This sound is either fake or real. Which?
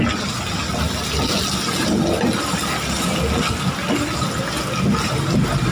real